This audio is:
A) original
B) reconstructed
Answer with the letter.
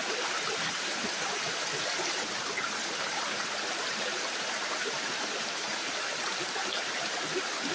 B